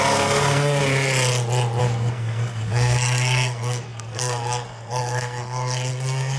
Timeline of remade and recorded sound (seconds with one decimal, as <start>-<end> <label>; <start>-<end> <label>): 0.0-0.8 remade; 0.8-1.8 recorded; 1.8-6.4 remade